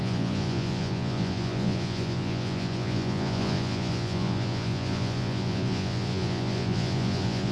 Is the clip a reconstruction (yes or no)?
yes